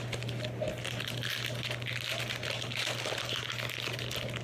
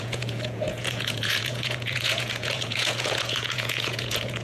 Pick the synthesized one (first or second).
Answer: second